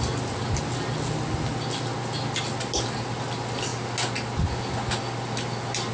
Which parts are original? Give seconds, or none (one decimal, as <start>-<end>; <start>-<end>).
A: 0.0-5.9